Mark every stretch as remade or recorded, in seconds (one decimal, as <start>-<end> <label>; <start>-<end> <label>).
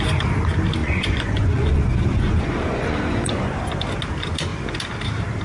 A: 0.0-0.8 recorded; 0.8-3.6 remade; 3.6-5.4 recorded